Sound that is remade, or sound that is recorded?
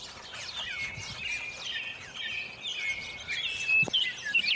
recorded